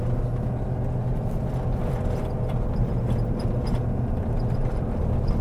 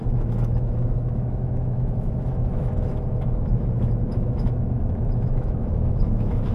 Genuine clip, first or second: first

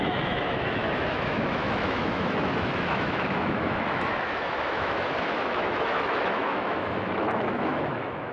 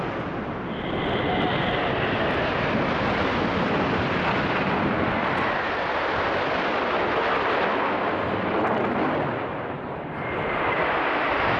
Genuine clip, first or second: second